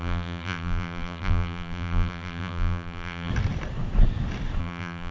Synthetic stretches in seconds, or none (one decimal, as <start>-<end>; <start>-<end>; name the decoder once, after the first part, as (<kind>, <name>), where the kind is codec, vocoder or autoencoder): 0.0-3.3 (vocoder, BigVGAN v2); 4.6-5.1